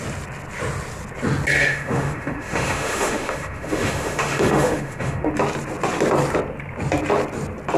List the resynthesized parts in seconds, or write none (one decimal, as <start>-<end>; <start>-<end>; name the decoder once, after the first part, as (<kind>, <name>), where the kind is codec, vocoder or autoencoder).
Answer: 1.6-5.3 (autoencoder, DAC-VAE)